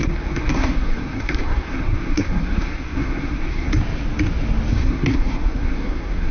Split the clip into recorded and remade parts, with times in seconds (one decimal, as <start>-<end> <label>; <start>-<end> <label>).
0.0-3.7 remade; 3.7-4.7 recorded; 4.7-6.3 remade